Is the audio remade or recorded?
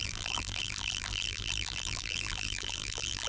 remade